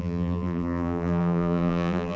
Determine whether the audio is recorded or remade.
remade